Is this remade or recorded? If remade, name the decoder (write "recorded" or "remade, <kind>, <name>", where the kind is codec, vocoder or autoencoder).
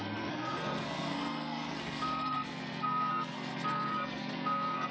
remade, codec, SNAC